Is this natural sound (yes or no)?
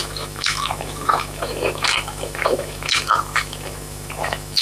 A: no